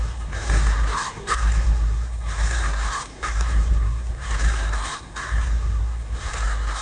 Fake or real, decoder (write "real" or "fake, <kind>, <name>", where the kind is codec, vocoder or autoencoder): fake, codec, SNAC